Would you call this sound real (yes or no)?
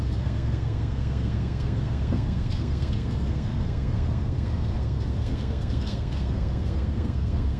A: no